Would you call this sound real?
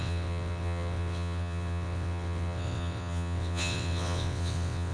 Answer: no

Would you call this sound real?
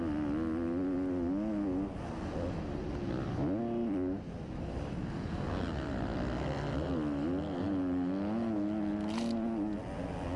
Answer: yes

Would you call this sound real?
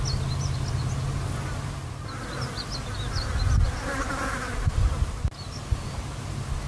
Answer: yes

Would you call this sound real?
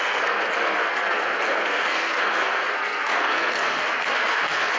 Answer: no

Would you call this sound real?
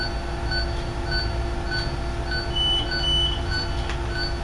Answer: yes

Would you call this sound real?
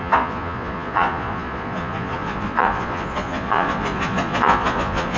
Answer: no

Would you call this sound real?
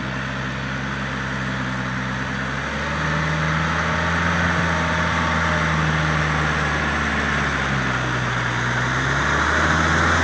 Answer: yes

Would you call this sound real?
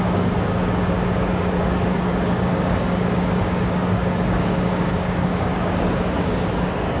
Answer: no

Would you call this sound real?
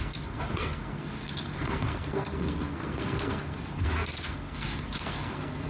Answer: no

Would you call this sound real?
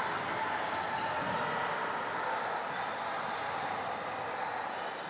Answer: yes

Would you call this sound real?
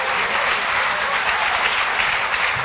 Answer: yes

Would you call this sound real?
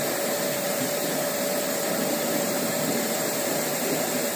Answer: no